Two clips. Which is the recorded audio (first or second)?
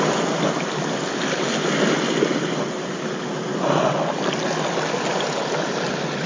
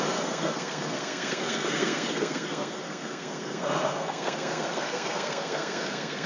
first